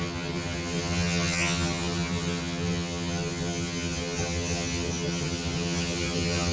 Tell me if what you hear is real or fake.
fake